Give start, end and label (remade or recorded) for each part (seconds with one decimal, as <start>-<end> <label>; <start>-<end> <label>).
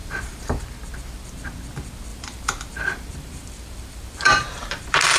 0.0-0.6 remade; 0.6-2.1 recorded; 2.1-5.2 remade